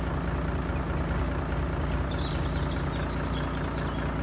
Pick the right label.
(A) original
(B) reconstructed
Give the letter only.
A